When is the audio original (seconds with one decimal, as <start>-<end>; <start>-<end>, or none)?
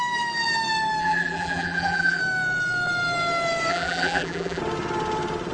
0.0-1.0; 2.2-3.7; 4.6-5.5